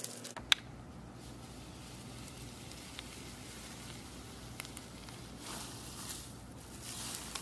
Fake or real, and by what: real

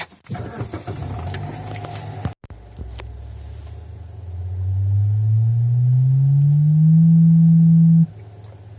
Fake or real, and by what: real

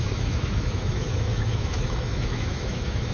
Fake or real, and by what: fake, autoencoder, DAC-VAE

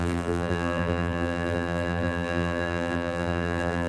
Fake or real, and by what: fake, vocoder, BigVGAN v2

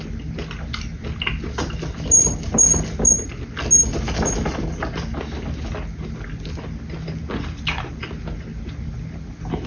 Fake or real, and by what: real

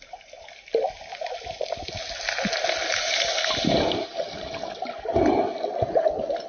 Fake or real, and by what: real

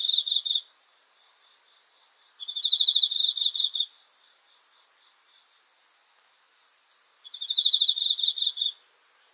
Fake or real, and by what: real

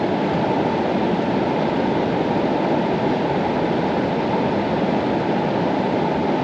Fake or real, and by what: real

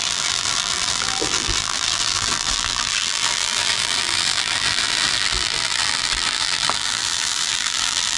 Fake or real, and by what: fake, vocoder, BigVGAN v2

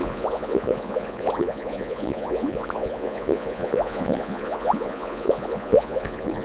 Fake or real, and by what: fake, vocoder, Vocos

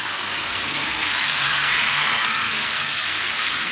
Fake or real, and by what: fake, codec, SNAC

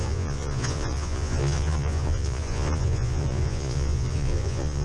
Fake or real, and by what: fake, vocoder, Vocos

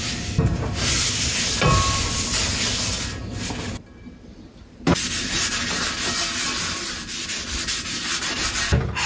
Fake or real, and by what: real